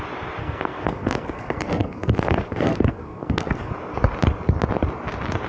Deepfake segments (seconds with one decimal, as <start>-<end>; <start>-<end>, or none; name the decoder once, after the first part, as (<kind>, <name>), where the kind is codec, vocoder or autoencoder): 0.4-3.7 (codec, SNAC)